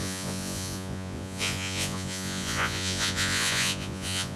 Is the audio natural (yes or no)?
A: no